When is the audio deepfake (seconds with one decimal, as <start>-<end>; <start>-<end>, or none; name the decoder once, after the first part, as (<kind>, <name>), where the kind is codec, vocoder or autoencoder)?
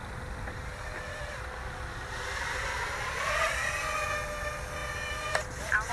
none